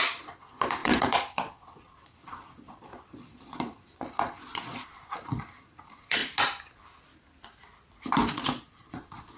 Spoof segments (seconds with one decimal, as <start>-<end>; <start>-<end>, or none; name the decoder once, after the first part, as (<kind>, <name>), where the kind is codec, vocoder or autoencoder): 0.0-6.2 (vocoder, Vocos); 8.3-9.4